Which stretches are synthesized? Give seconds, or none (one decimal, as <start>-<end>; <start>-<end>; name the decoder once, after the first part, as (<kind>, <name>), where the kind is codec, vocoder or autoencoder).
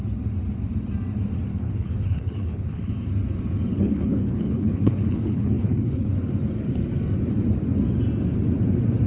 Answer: 1.5-2.9 (codec, HILCodec); 3.7-6.1